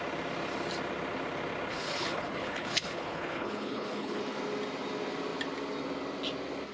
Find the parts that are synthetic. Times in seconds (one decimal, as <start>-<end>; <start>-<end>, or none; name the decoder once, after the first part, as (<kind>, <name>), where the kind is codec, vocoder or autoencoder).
1.7-4.2 (codec, HILCodec)